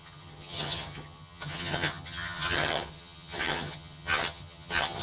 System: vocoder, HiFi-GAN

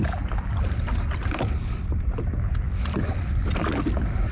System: none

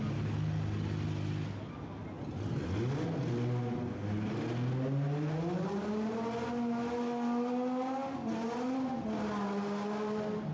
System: none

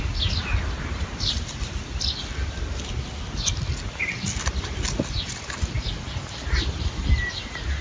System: none